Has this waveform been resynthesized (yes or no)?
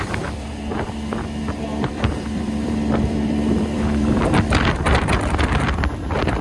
yes